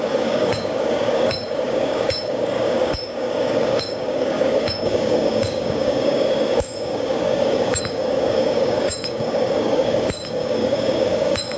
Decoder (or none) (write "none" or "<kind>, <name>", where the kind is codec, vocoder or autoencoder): codec, DAC